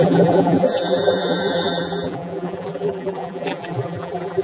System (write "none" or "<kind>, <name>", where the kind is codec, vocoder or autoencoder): vocoder, BigVGAN v2